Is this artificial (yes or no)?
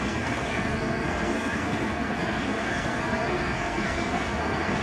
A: yes